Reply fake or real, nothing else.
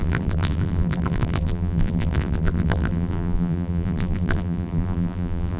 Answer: fake